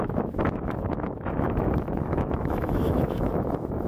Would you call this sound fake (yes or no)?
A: yes